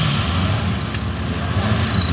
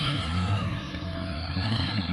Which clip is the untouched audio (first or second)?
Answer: first